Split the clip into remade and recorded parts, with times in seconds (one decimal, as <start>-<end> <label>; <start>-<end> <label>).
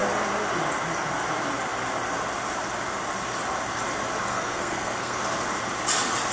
0.0-4.3 recorded; 4.3-5.2 remade; 5.2-6.3 recorded